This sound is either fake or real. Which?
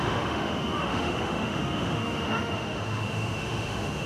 fake